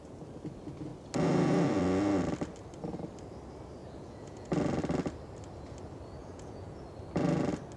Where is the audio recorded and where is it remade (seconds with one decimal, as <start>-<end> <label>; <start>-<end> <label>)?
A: 0.0-3.8 recorded; 3.8-4.5 remade; 4.5-6.2 recorded; 6.2-6.8 remade; 6.8-7.8 recorded